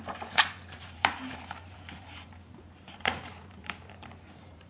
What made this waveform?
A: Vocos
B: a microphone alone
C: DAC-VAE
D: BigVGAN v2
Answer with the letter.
D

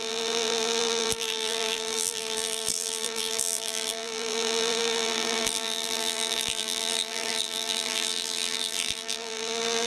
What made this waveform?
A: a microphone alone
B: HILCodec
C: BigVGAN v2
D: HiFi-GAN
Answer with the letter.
C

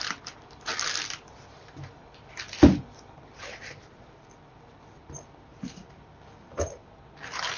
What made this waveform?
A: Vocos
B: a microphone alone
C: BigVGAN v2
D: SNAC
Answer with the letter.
C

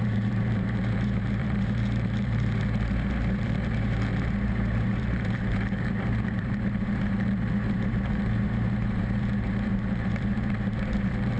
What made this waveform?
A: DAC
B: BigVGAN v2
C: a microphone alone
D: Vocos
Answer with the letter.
B